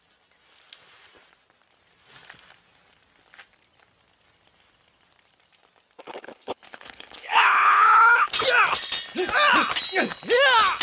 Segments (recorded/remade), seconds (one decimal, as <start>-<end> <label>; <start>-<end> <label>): 0.0-6.0 recorded; 6.0-8.3 remade; 8.3-10.8 recorded